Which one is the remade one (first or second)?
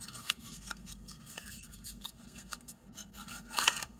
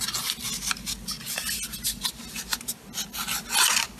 first